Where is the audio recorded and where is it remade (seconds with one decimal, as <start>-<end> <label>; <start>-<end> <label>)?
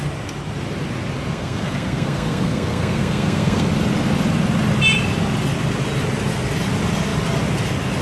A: 0.0-1.3 recorded; 1.3-3.7 remade; 3.7-8.0 recorded